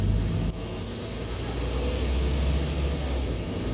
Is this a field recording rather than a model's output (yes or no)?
yes